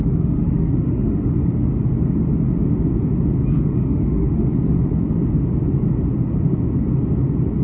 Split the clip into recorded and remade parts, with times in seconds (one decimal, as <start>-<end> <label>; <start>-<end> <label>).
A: 0.0-1.3 remade; 1.3-3.5 recorded; 3.5-4.5 remade; 4.5-7.6 recorded